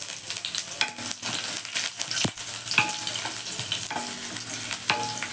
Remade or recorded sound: recorded